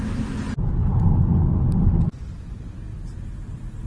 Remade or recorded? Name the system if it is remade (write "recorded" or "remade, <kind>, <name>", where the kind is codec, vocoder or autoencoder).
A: recorded